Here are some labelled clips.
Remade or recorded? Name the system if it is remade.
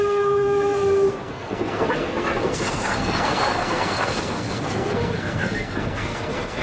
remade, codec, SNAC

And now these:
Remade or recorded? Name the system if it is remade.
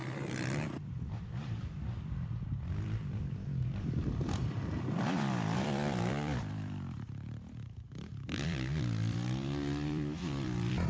remade, vocoder, BigVGAN v2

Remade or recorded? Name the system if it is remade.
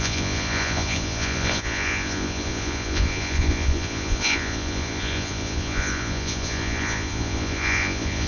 remade, vocoder, Vocos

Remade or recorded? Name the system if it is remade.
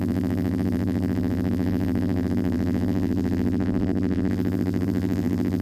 remade, vocoder, BigVGAN v2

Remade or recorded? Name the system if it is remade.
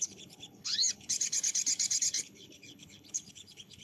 remade, codec, HILCodec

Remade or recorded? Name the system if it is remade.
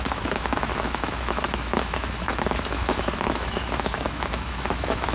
remade, autoencoder, DAC-VAE